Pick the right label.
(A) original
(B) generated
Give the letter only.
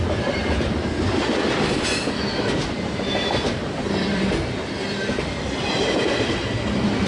B